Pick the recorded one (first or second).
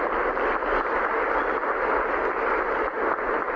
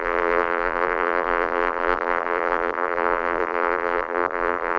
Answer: first